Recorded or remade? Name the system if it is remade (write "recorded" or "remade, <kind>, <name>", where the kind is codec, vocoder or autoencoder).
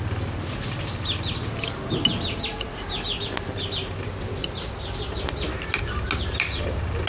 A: recorded